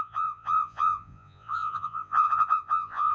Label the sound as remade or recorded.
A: remade